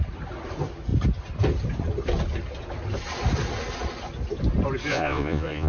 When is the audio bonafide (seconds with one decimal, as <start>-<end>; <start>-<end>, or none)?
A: 0.0-4.9